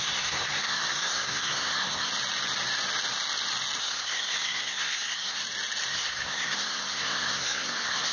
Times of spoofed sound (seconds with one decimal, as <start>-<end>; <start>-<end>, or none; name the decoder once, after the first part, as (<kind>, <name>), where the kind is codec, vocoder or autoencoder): 0.0-2.1 (codec, SNAC); 3.8-5.4; 5.9-8.1